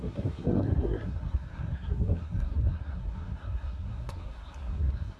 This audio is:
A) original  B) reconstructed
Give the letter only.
B